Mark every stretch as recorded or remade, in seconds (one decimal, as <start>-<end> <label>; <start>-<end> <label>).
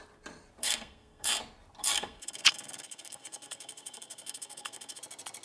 0.0-0.6 recorded; 0.6-1.4 remade; 1.4-1.8 recorded; 1.8-5.0 remade; 5.0-5.4 recorded